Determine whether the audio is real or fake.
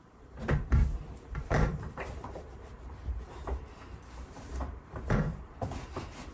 fake